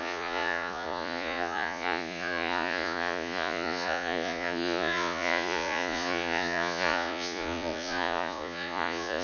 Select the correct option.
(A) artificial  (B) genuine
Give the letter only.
A